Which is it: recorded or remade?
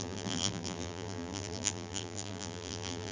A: remade